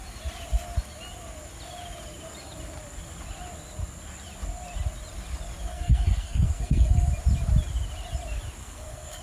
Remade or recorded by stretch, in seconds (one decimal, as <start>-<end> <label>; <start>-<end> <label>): 0.0-5.7 recorded; 5.7-7.1 remade; 7.1-8.6 recorded; 8.6-9.2 remade